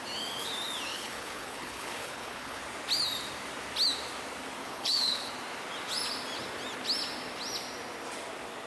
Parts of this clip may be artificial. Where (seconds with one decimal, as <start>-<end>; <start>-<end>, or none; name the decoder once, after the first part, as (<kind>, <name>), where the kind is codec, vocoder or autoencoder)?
0.9-2.6 (codec, HILCodec); 4.6-5.3